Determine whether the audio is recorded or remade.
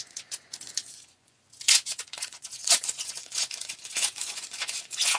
remade